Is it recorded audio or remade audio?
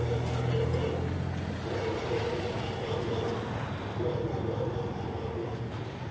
recorded